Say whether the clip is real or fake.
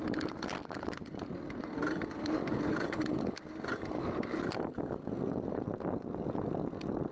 real